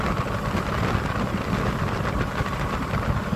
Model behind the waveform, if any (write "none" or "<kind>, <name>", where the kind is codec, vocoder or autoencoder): none